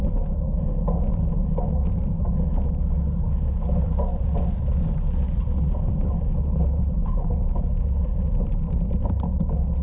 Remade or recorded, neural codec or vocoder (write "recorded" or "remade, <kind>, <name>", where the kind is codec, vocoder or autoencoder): recorded